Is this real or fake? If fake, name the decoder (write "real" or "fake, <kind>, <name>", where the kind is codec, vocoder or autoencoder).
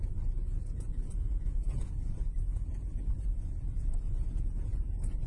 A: fake, vocoder, Vocos